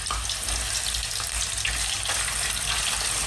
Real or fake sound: real